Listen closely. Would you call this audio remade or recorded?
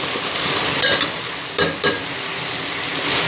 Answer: recorded